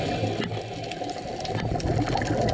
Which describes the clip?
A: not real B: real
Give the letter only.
B